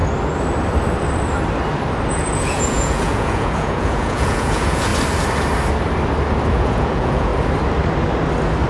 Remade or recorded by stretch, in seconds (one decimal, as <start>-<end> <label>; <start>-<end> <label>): 0.0-2.1 recorded; 2.1-4.9 remade; 4.9-6.5 recorded; 6.5-7.3 remade; 7.3-8.7 recorded